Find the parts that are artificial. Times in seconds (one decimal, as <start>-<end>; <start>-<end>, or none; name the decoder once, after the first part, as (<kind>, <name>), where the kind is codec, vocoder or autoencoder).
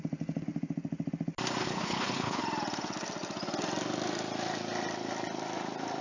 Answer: 1.6-2.4 (codec, HILCodec)